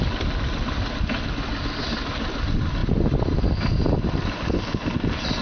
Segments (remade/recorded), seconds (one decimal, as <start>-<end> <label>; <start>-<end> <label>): 0.0-5.4 recorded